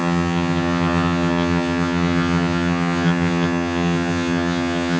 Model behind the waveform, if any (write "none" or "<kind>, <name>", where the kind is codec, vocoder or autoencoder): vocoder, HiFi-GAN